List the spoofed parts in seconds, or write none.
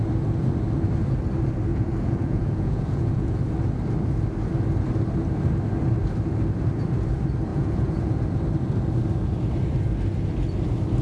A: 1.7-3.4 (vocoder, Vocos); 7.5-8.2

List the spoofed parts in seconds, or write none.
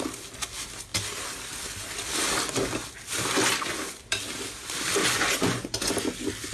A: 5.0-5.9 (vocoder, Vocos)